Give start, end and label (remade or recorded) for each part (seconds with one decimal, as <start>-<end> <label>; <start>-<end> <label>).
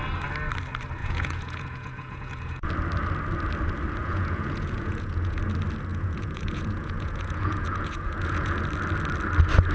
0.0-1.0 recorded; 1.0-2.7 remade; 2.7-4.0 recorded; 4.0-5.4 remade; 5.4-5.9 recorded; 5.9-8.6 remade; 8.6-9.7 recorded